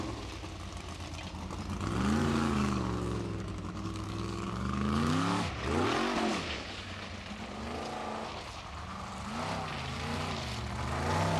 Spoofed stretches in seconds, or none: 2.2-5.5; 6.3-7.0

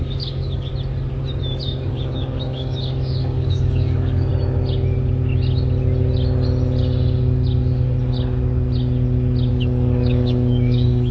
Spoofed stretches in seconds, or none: 0.0-0.7; 1.4-4.3; 9.5-11.1